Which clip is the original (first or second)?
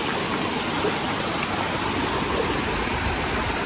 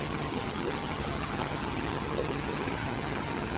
first